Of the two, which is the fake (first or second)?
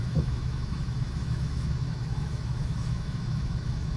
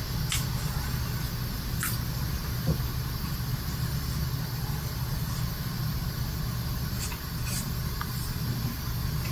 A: first